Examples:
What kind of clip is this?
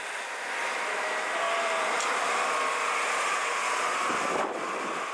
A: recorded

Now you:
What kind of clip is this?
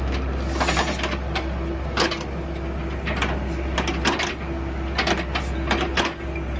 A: recorded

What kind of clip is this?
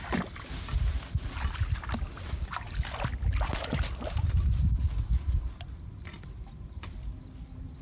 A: recorded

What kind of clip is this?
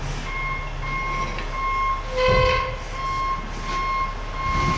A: recorded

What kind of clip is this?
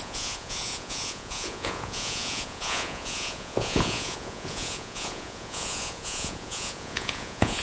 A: remade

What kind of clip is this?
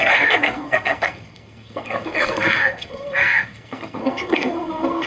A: remade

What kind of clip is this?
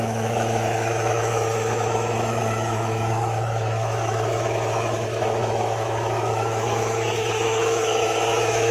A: remade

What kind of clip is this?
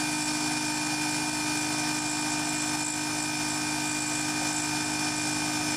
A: recorded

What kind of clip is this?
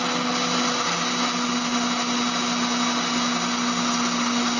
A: recorded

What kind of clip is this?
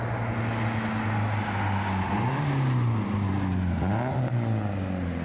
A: recorded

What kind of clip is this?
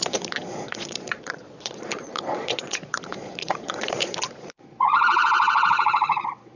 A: remade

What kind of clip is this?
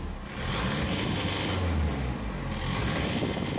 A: recorded